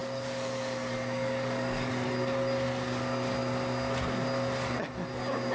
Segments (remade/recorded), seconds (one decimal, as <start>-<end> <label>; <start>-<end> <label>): 0.0-1.9 remade; 1.9-5.5 recorded